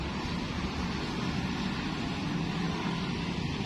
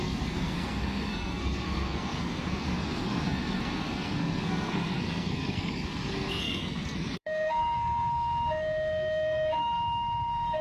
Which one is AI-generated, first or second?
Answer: second